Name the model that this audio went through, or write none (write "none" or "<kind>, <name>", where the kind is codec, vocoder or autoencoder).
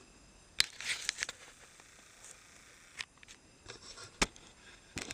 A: none